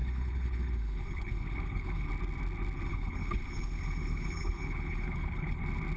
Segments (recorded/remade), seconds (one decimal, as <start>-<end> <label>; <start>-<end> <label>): 0.0-2.1 remade; 2.1-2.9 recorded; 2.9-5.6 remade; 5.6-6.0 recorded